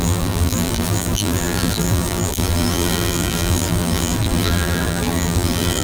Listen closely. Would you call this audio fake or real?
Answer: fake